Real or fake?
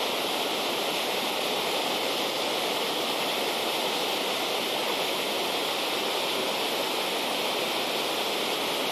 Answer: real